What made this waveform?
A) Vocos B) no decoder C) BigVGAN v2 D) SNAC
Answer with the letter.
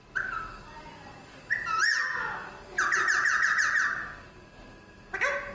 B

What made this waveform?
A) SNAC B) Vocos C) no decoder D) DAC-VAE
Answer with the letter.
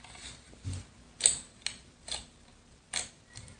C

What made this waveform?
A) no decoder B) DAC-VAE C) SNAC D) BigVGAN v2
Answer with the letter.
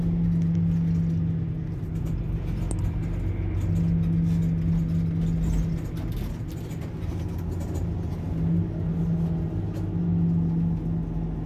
A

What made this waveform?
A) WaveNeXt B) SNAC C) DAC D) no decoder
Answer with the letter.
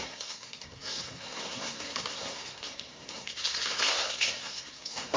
B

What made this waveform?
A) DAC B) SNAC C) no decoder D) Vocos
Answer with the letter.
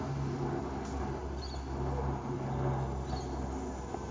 C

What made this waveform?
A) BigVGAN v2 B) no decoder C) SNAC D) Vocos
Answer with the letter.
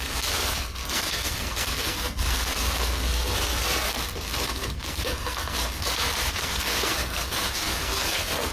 C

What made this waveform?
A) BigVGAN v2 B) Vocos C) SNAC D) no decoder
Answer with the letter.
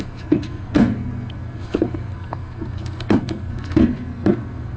C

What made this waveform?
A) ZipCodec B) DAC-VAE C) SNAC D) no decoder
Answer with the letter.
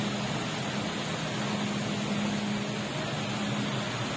D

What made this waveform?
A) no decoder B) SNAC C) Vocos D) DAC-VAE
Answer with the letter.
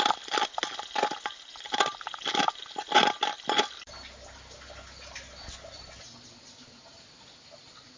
A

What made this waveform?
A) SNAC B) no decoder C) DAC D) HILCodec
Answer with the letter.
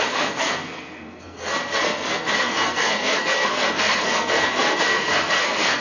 A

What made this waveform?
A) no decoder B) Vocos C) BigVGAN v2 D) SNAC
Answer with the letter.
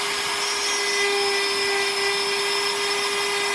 A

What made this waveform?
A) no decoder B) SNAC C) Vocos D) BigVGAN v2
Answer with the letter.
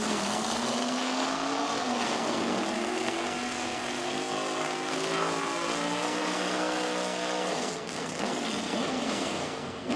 B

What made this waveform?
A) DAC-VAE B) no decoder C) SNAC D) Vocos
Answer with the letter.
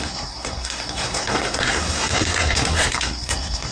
C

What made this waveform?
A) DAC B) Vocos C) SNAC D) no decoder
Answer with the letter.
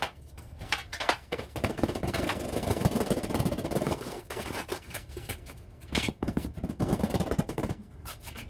C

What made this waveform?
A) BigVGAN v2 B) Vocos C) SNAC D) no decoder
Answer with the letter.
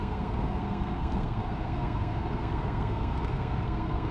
C